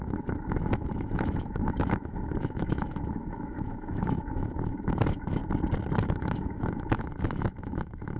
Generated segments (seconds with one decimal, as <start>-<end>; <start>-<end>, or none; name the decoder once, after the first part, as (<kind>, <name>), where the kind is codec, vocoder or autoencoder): 0.0-5.4 (autoencoder, DAC-VAE); 6.0-8.2